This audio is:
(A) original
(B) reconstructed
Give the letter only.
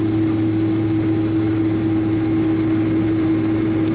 A